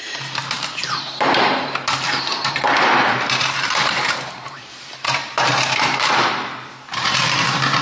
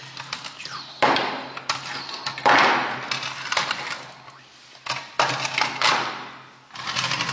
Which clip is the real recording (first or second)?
second